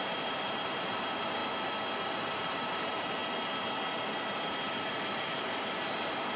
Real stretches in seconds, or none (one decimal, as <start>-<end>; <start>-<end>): 1.4-2.1; 3.2-6.4